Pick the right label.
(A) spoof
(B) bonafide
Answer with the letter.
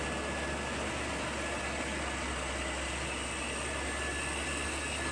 B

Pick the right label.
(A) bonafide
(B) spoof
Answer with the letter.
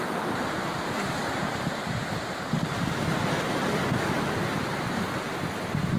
B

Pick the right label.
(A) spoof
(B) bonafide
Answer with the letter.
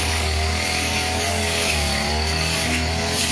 A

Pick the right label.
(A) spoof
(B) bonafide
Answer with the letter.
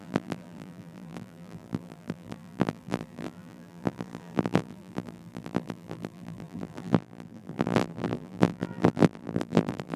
A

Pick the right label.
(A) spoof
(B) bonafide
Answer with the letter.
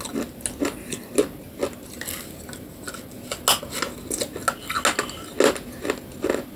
B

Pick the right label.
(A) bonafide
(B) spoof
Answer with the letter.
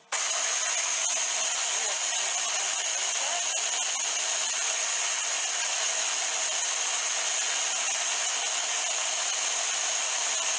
A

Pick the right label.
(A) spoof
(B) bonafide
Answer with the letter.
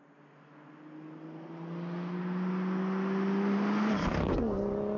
B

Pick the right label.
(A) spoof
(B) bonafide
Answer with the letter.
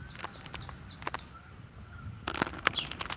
B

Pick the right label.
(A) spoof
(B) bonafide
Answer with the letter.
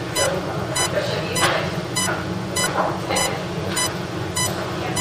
A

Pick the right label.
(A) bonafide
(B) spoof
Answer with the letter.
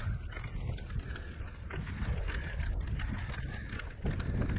A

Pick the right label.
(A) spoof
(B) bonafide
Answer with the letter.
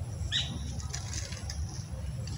B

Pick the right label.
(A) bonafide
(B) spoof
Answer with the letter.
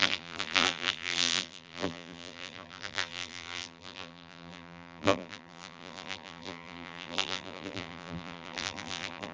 B